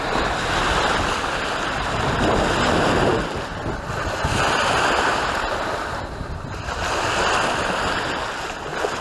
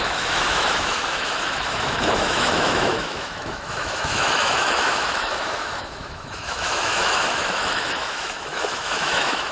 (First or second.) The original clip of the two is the first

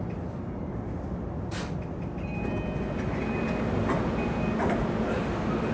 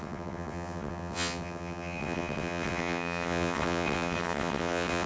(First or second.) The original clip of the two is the first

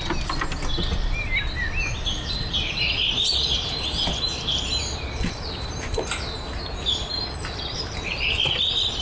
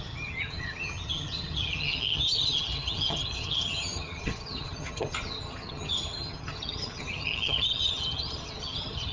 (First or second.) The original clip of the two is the first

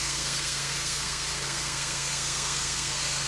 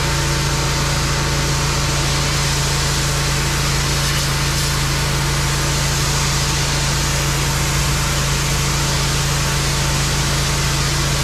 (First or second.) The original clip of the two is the second